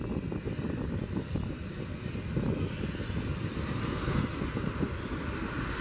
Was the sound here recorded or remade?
recorded